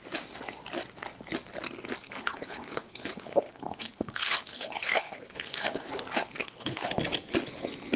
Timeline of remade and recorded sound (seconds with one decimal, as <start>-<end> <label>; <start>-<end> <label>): 0.0-2.0 recorded; 2.0-5.9 remade; 5.9-6.4 recorded; 6.4-6.9 remade; 6.9-8.0 recorded